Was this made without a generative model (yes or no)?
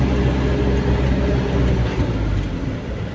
yes